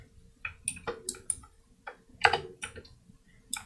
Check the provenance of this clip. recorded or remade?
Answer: recorded